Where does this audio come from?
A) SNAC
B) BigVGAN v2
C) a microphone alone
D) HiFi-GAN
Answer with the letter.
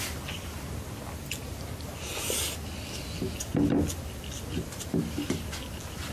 C